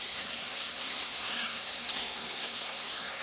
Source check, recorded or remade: remade